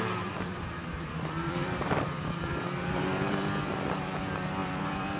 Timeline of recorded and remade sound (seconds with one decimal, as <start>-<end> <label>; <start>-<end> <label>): 0.0-0.5 recorded; 0.5-3.6 remade; 3.6-4.6 recorded; 4.6-5.2 remade